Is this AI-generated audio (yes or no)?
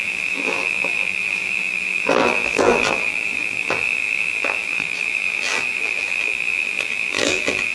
yes